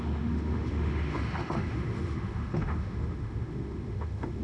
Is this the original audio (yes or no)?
no